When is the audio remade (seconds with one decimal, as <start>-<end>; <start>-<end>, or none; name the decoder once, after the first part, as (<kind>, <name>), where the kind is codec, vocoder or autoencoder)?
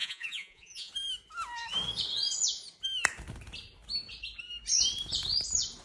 0.0-0.9 (vocoder, Vocos)